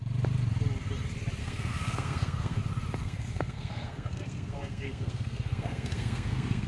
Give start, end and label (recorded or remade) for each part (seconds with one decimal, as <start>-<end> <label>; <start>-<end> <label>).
0.0-1.4 recorded; 1.4-2.6 remade; 2.6-3.0 recorded; 3.0-6.7 remade